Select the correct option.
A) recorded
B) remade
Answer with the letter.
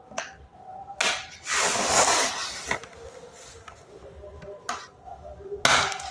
A